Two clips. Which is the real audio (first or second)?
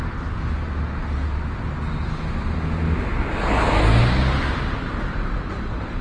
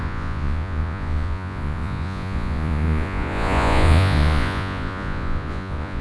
first